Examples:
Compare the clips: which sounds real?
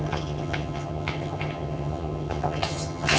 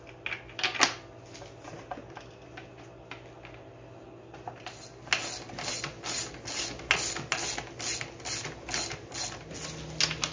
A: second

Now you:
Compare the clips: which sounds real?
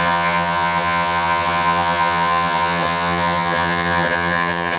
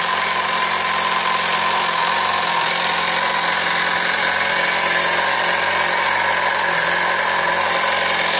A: second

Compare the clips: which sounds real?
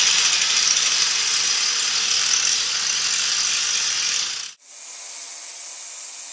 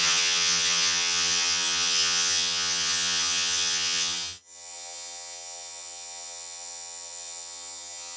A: first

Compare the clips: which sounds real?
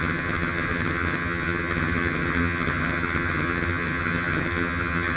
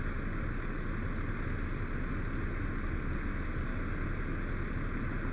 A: second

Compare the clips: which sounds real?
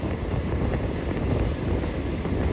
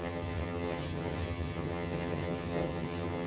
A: first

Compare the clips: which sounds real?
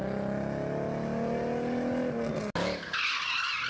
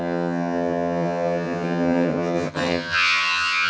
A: first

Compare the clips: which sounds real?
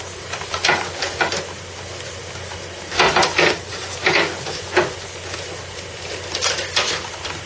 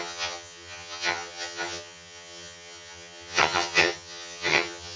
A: first